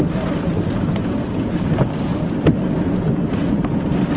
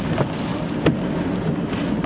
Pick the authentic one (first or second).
second